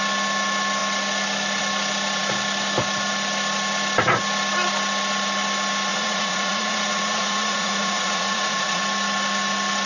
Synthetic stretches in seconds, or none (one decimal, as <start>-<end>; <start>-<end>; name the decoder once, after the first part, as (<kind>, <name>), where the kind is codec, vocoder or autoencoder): 5.9-8.8 (vocoder, Vocos)